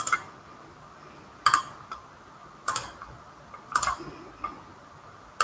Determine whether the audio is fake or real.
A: real